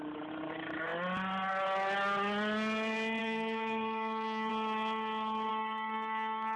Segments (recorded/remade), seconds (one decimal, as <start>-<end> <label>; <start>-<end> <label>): 0.0-3.2 recorded; 3.2-4.5 remade; 4.5-5.5 recorded; 5.5-6.6 remade